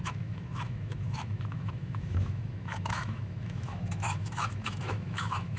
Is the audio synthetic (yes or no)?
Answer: yes